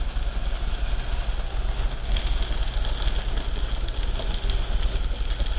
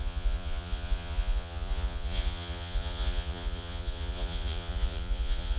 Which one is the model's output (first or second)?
second